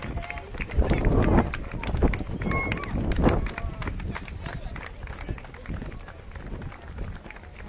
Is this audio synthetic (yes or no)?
no